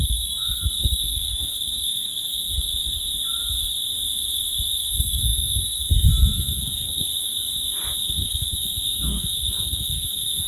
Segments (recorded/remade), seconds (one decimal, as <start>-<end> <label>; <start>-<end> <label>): 0.0-2.7 remade; 2.7-4.8 recorded; 4.8-7.1 remade; 7.1-8.0 recorded; 8.0-10.5 remade